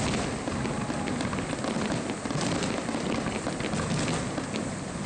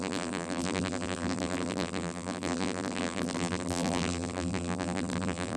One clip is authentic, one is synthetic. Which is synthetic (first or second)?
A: second